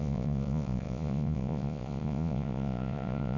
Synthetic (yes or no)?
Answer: yes